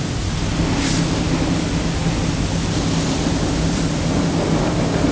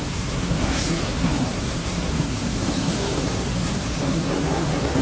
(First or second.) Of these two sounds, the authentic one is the first